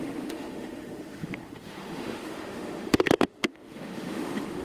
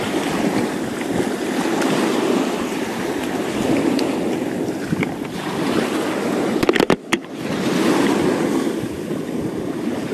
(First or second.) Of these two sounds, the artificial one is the first